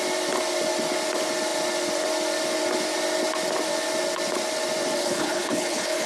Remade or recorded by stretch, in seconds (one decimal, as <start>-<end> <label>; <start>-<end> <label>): 0.0-5.0 recorded; 5.0-6.1 remade